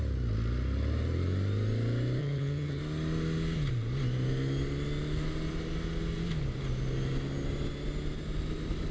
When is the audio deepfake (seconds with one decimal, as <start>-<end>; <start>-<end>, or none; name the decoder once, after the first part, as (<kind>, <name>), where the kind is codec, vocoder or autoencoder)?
2.2-2.8 (vocoder, HiFi-GAN)